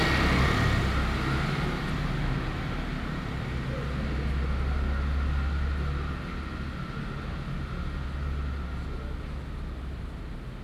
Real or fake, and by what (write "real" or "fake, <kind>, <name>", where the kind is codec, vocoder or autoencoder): real